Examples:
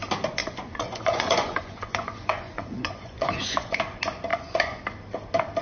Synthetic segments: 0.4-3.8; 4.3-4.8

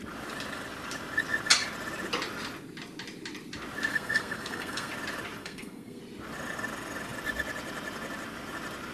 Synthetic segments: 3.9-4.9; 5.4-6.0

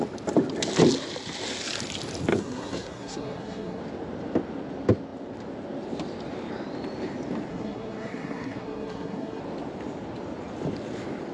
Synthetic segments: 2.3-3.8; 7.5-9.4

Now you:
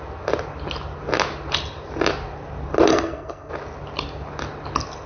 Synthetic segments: 2.9-3.5

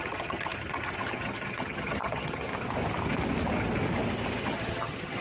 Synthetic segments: 0.0-2.5; 4.4-5.2

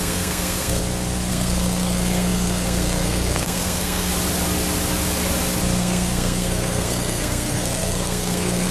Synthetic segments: 0.0-0.8; 1.3-4.1; 5.8-8.7

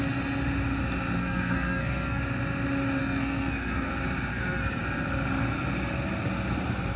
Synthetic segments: 1.2-2.2; 3.0-3.9; 4.3-4.8

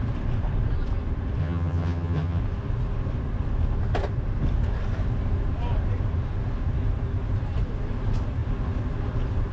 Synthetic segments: 1.4-2.4